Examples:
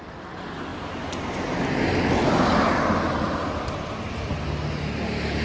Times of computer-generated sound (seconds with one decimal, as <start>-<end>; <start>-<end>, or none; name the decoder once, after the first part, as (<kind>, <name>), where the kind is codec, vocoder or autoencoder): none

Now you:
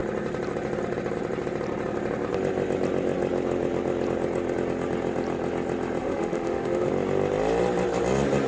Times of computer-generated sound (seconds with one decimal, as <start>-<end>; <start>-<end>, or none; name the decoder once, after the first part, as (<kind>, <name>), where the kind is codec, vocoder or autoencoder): 6.0-6.9 (autoencoder, DAC-VAE)

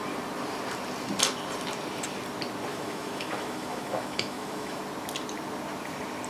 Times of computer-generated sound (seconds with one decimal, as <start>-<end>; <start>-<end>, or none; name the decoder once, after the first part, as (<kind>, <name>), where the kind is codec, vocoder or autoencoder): 2.7-4.8 (autoencoder, DAC-VAE)

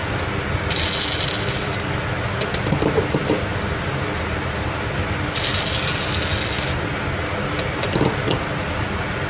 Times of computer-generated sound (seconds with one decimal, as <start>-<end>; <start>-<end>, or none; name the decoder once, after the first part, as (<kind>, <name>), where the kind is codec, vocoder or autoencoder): none

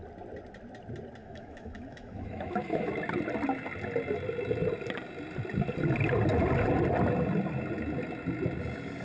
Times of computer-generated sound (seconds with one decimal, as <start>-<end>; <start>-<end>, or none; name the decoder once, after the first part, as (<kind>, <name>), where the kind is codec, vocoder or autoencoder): 1.2-2.9 (autoencoder, DAC-VAE)